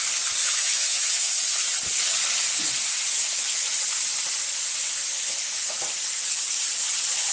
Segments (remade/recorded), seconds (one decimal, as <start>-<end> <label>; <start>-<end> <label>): 0.0-0.4 recorded; 0.4-1.3 remade; 1.3-3.1 recorded; 3.1-3.7 remade; 3.7-5.1 recorded; 5.1-5.8 remade; 5.8-7.3 recorded